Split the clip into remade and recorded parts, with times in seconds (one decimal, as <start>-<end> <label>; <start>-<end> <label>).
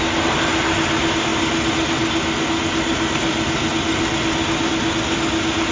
0.0-5.7 recorded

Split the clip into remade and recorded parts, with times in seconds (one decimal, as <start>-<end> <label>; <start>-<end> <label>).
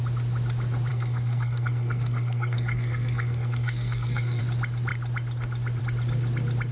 0.0-0.9 recorded; 0.9-4.4 remade; 4.4-6.7 recorded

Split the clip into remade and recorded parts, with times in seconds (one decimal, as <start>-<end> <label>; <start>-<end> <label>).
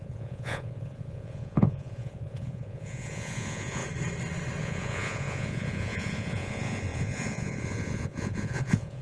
0.0-3.8 remade; 3.8-4.6 recorded; 4.6-9.0 remade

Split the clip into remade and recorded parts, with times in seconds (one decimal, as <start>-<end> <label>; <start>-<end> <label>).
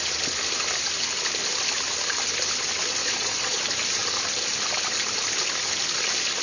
0.0-3.0 recorded; 3.0-3.6 remade; 3.6-6.4 recorded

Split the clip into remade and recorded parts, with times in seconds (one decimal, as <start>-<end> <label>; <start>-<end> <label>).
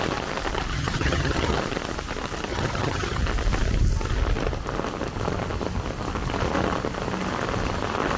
0.0-0.7 recorded; 0.7-1.6 remade; 1.6-2.5 recorded; 2.5-3.2 remade; 3.2-8.2 recorded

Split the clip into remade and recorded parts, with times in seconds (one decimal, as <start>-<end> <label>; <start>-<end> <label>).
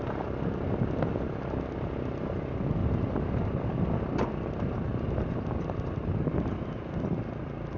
0.0-2.8 recorded; 2.8-3.7 remade; 3.7-7.8 recorded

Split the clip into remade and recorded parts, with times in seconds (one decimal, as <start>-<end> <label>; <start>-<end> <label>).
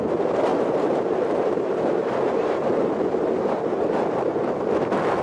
0.0-0.5 recorded; 0.5-3.6 remade; 3.6-5.2 recorded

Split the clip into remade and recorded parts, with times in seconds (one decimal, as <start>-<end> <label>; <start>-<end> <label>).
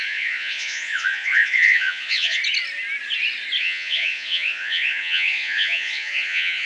0.0-2.4 remade; 2.4-3.6 recorded; 3.6-6.7 remade